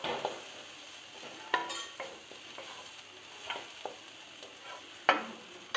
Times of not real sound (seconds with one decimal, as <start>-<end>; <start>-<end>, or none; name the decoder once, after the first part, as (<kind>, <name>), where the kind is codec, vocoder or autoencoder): none